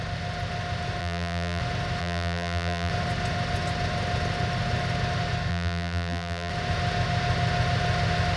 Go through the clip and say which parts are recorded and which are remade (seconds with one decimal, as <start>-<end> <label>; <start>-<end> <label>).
0.0-1.0 recorded; 1.0-1.6 remade; 1.6-2.0 recorded; 2.0-2.9 remade; 2.9-5.5 recorded; 5.5-6.5 remade; 6.5-8.4 recorded